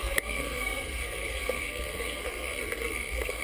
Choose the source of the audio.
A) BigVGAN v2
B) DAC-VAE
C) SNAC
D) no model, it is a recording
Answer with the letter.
C